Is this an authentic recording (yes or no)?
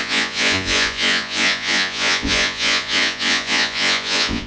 no